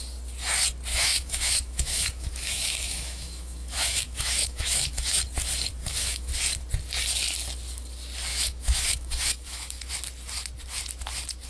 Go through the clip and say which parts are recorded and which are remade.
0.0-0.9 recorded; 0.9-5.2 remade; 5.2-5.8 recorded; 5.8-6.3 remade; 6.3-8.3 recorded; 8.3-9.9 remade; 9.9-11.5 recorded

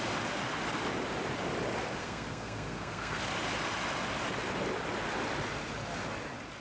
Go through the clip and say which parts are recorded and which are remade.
0.0-2.0 recorded; 2.0-3.2 remade; 3.2-6.6 recorded